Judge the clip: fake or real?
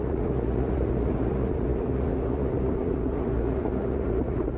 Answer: fake